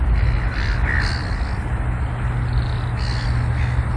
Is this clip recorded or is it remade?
recorded